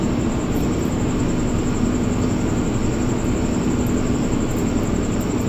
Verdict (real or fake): real